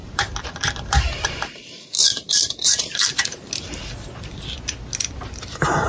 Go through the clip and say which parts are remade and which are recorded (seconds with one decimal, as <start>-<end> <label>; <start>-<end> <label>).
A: 0.0-3.5 remade; 3.5-5.9 recorded